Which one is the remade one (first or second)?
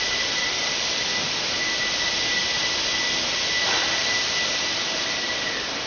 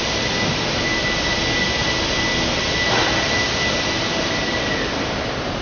first